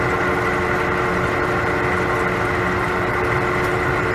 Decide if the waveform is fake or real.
real